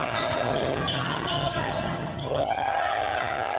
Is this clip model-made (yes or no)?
yes